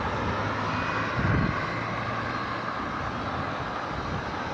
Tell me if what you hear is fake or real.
real